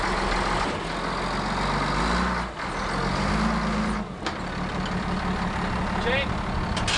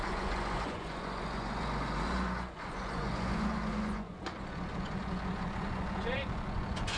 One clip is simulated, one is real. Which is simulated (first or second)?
second